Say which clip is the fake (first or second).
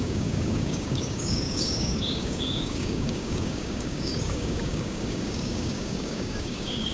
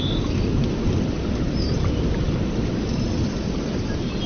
first